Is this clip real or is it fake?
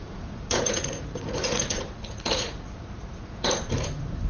fake